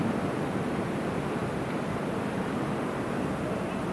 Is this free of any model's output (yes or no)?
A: no